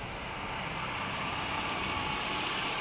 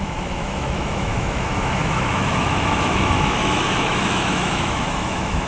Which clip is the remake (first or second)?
second